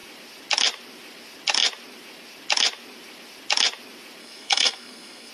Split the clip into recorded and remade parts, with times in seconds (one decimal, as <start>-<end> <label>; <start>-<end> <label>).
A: 0.0-4.2 recorded; 4.2-5.3 remade